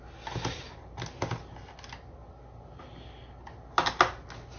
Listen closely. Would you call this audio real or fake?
real